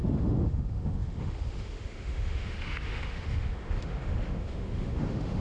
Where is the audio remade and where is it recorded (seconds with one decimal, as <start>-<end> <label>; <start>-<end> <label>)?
0.0-5.4 remade